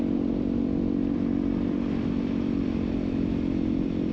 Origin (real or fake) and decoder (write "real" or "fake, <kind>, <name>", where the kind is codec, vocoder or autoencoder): fake, vocoder, BigVGAN v2